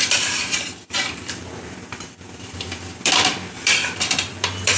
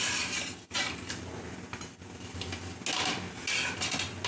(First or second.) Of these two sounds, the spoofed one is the first